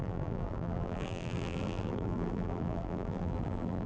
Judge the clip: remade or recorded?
remade